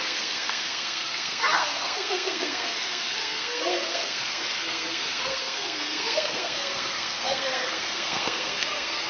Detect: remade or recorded remade